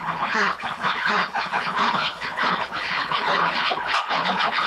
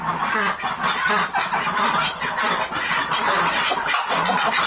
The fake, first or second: first